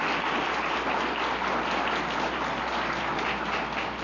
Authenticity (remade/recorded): recorded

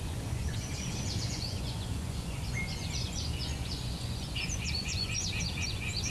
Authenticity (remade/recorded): remade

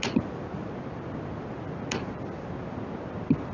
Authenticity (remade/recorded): recorded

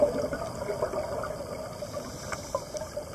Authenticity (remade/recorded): recorded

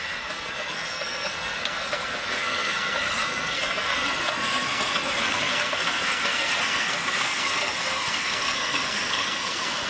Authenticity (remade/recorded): remade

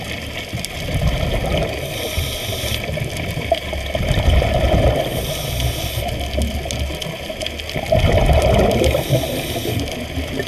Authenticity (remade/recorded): recorded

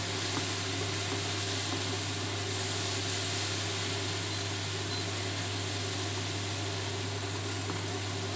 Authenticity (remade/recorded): recorded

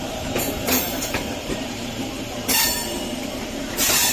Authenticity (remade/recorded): remade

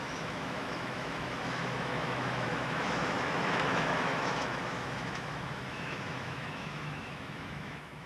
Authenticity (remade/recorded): remade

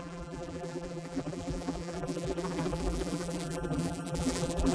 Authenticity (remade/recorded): remade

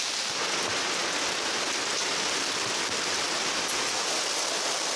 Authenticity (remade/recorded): recorded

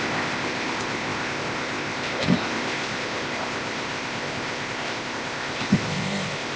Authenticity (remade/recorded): remade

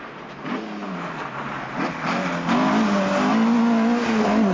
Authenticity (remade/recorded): recorded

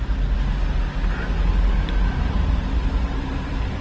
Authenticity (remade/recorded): recorded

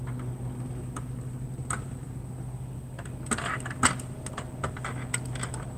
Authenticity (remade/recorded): recorded